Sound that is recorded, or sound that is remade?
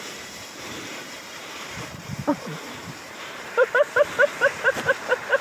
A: remade